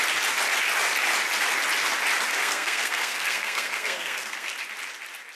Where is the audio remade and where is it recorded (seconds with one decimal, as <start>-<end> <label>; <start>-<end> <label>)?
0.0-2.4 recorded; 2.4-4.5 remade; 4.5-5.3 recorded